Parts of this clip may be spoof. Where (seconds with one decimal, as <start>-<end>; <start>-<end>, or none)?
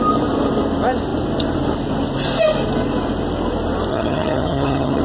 3.9-5.0